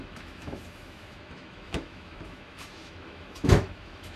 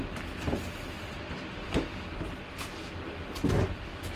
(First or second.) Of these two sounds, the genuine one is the second